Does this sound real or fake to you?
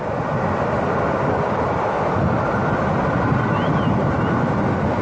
real